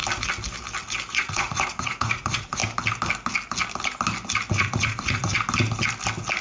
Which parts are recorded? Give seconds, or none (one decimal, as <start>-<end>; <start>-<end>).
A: 0.0-1.1; 2.6-4.5; 5.3-6.4